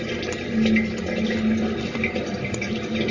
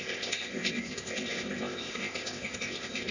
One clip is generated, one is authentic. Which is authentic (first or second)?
first